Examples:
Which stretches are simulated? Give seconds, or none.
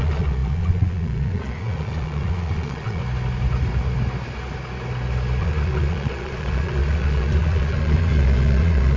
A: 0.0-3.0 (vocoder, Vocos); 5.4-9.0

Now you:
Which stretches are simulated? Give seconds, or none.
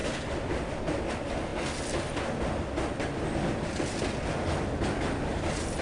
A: none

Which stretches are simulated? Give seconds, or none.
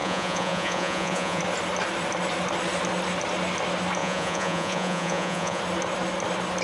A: 0.0-1.4 (vocoder, Vocos); 4.0-5.6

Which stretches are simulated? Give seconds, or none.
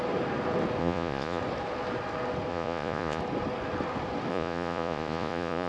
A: 0.8-1.4 (vocoder, Vocos); 2.5-3.2; 4.3-5.7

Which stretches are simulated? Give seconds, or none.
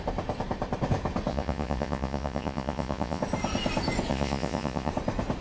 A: 1.3-3.2 (vocoder, Vocos); 4.1-4.9